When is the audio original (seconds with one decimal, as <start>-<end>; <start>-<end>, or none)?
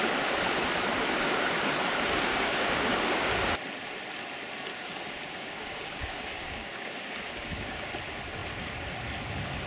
0.0-2.3; 3.3-4.7; 7.9-9.7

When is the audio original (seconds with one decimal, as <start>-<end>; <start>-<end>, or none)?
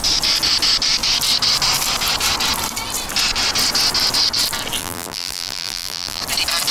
0.0-4.8; 6.2-6.7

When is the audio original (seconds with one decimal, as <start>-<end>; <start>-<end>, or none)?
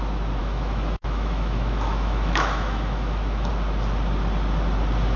0.0-0.4; 3.5-5.2